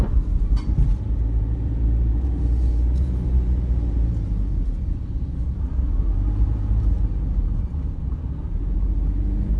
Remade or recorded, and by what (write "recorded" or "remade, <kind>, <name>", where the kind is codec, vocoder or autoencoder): remade, vocoder, BigVGAN v2